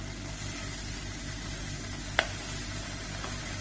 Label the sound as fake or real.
real